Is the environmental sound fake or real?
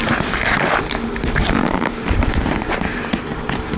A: fake